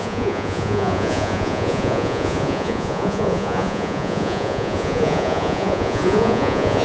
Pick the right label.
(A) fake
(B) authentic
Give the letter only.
A